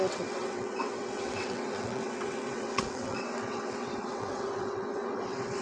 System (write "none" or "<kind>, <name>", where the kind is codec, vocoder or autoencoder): vocoder, WaveNeXt